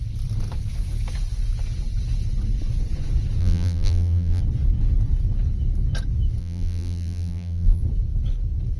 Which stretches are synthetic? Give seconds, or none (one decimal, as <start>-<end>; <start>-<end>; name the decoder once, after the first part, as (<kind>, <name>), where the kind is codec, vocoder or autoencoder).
3.4-4.4 (vocoder, BigVGAN v2); 6.4-7.8